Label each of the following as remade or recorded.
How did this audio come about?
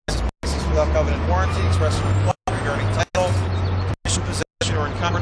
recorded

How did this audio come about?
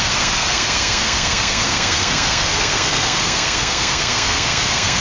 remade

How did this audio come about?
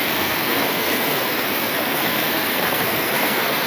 remade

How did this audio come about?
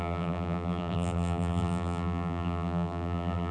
remade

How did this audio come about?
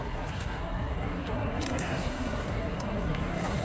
remade